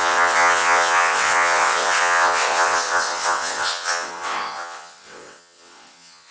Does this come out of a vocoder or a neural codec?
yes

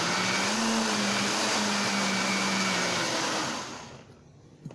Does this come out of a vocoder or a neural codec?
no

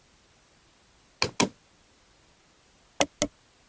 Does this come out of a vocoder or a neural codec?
no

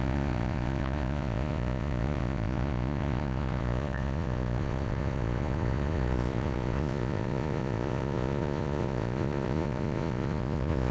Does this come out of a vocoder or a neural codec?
yes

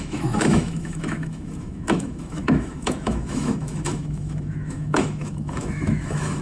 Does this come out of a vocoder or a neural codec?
yes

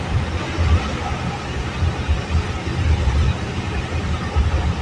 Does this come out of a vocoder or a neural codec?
no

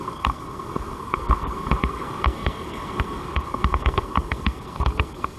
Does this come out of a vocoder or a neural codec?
yes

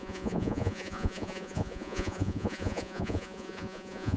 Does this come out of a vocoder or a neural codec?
yes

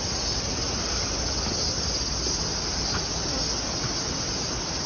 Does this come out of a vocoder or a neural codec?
no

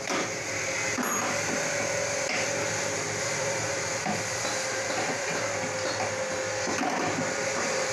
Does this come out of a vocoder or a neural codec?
no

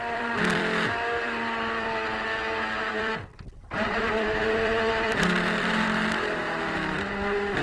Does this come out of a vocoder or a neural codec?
yes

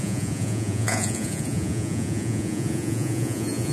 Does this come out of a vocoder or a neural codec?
yes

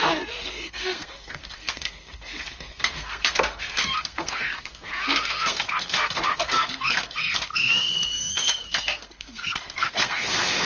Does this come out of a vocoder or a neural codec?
yes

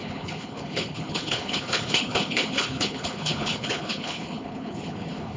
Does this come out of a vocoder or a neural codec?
yes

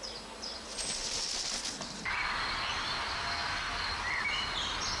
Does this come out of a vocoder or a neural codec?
no